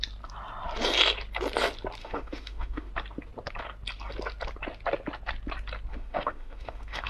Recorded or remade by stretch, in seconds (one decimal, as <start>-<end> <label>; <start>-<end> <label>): 0.0-2.0 recorded; 2.0-2.9 remade; 2.9-5.9 recorded; 5.9-7.1 remade